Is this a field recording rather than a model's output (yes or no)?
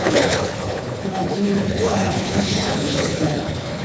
no